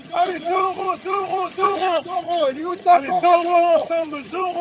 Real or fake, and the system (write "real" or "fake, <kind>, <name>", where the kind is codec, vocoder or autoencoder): fake, vocoder, HiFi-GAN